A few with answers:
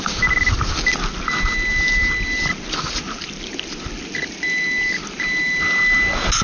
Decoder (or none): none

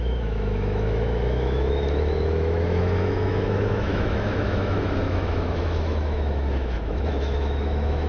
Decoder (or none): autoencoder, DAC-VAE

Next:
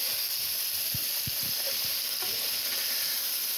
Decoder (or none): none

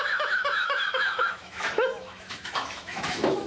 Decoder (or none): autoencoder, DAC-VAE